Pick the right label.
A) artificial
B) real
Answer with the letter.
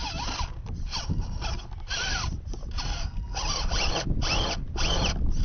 B